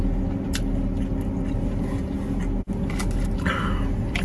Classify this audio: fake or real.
real